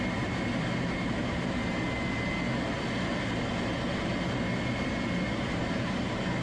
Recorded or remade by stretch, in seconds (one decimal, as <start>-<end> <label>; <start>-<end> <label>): 0.0-1.6 remade; 1.6-5.4 recorded; 5.4-6.4 remade